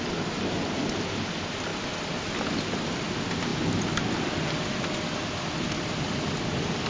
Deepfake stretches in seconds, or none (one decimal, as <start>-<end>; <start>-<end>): none